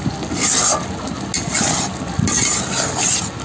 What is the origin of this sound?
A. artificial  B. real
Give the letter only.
B